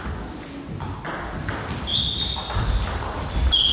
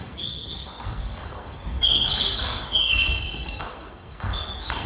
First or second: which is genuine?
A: first